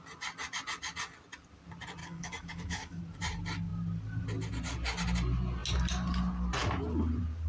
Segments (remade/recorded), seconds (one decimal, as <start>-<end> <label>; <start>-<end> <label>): 0.0-2.0 recorded; 2.0-3.0 remade; 3.0-7.5 recorded